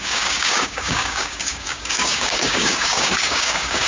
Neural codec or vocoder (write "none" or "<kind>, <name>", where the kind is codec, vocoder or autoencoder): codec, DAC